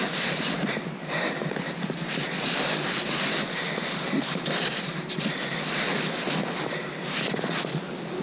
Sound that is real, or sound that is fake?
real